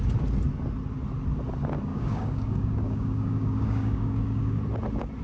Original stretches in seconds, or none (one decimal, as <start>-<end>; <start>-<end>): 0.0-1.9; 4.6-5.2